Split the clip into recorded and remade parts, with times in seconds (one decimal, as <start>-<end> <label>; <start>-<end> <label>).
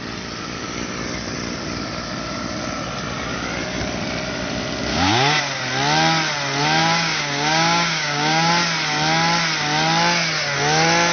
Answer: 0.0-4.9 recorded; 4.9-5.4 remade; 5.4-6.8 recorded; 6.8-8.5 remade; 8.5-11.1 recorded